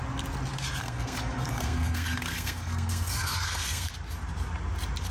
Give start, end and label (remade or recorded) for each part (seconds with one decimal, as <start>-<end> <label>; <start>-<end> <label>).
0.0-0.8 recorded; 0.8-3.9 remade; 3.9-5.1 recorded